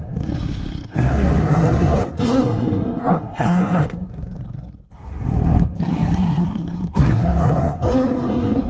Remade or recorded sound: remade